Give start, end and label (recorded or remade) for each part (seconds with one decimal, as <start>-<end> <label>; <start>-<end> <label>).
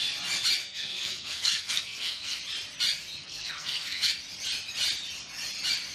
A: 0.0-0.6 recorded; 0.6-2.4 remade; 2.4-3.2 recorded; 3.2-4.1 remade; 4.1-5.9 recorded